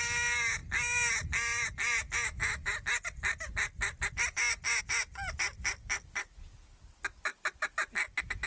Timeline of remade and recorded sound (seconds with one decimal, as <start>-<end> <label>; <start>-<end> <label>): 0.0-8.5 recorded